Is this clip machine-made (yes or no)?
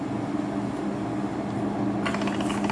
no